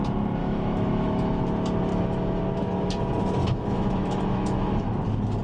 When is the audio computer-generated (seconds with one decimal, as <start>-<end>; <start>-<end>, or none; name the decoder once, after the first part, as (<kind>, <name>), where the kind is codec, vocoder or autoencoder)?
0.4-1.4 (autoencoder, DAC-VAE); 1.9-2.4; 3.4-5.0